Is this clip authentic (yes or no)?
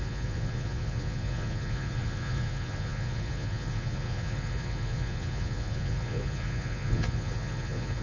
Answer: no